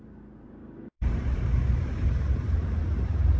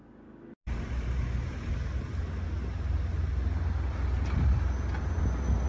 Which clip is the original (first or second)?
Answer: second